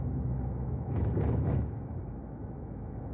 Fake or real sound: fake